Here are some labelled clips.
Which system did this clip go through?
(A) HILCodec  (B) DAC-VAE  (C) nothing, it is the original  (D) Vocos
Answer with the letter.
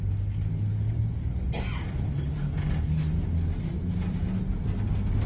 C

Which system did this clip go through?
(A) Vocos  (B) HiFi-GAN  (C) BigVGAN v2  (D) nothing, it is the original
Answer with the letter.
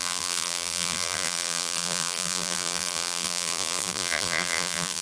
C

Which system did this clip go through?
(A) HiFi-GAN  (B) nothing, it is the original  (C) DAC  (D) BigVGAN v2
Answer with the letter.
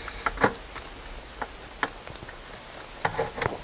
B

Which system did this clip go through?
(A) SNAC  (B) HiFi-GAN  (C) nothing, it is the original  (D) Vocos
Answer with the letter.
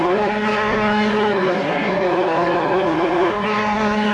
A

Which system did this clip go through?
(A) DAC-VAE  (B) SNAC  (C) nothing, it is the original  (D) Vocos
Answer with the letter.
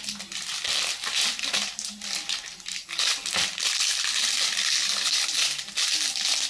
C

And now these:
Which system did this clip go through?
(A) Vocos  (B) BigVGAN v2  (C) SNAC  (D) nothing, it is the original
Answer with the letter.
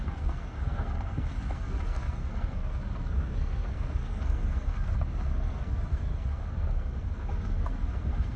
C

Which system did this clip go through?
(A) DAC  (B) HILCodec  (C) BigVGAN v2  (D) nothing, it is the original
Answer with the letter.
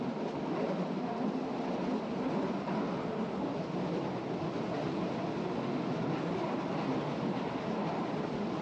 D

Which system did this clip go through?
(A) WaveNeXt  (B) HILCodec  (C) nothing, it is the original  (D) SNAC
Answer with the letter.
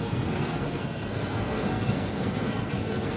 D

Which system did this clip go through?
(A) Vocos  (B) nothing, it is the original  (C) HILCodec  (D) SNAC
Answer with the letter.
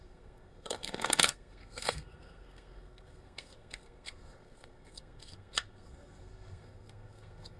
D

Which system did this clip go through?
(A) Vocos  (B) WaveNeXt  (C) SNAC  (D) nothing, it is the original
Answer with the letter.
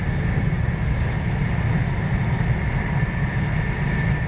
D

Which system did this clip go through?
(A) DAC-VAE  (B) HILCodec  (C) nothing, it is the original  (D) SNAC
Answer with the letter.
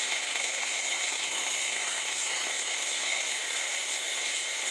D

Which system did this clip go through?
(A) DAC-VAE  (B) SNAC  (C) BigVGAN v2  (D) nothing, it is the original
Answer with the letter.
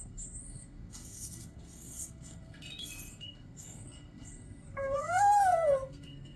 B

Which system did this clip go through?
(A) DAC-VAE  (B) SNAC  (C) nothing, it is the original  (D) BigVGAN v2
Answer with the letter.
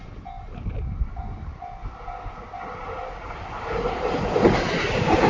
C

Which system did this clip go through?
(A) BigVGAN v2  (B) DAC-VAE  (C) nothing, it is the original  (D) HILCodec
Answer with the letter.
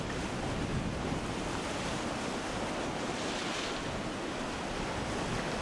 C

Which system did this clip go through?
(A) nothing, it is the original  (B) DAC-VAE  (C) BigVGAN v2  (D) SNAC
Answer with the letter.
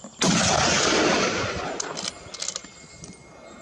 A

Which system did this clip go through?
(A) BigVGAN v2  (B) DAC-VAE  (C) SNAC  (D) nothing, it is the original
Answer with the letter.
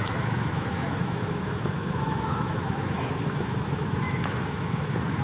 B